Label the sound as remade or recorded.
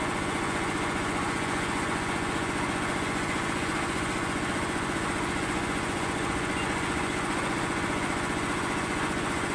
remade